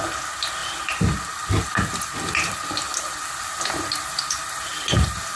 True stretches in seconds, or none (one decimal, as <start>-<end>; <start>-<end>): 0.0-5.4